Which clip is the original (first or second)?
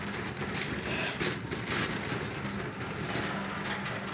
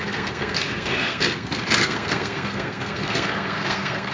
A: first